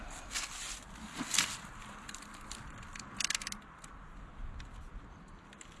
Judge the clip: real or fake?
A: real